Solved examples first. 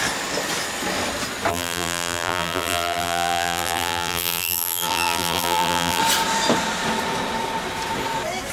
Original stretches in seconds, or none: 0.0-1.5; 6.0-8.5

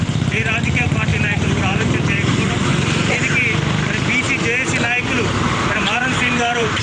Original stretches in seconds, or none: 2.3-5.6

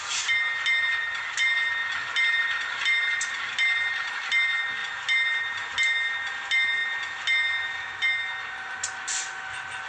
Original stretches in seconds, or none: 0.0-9.9

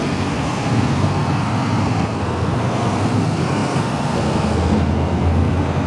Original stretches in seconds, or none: none

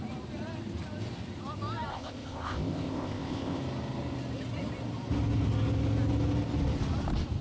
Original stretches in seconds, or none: 0.0-1.9; 3.6-7.4